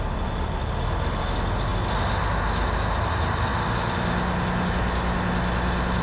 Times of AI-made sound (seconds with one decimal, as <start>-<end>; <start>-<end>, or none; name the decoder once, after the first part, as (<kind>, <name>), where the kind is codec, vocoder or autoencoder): none